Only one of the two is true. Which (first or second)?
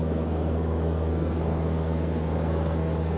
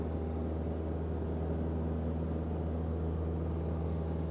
second